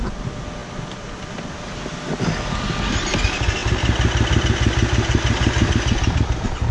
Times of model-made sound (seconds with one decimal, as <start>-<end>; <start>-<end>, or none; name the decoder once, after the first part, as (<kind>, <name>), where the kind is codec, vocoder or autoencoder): none